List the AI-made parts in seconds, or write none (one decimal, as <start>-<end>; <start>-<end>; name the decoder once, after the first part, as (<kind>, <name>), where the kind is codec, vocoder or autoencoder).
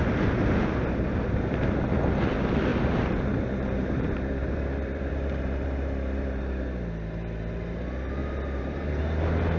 2.7-6.4 (vocoder, BigVGAN v2); 8.2-9.0